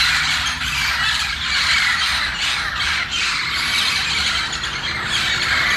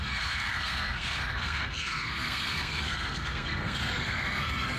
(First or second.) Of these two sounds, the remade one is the second